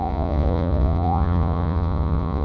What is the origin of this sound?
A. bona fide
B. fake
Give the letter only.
B